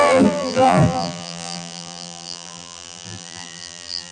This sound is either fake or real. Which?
fake